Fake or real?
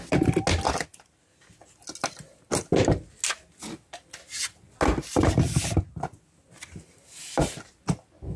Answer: real